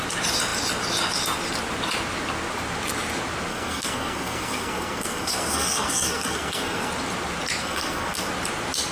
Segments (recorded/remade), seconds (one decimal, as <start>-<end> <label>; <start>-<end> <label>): 0.0-3.5 recorded; 3.5-6.9 remade; 6.9-7.6 recorded; 7.6-8.3 remade; 8.3-8.9 recorded